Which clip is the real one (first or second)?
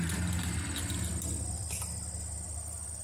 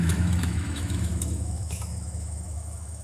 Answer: first